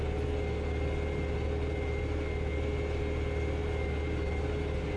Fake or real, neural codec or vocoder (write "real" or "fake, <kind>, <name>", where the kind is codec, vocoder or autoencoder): real